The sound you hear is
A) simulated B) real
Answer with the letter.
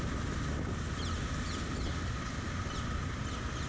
B